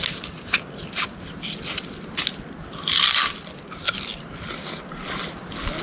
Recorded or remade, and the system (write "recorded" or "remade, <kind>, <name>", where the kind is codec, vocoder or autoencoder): recorded